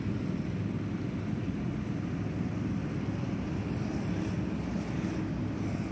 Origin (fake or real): real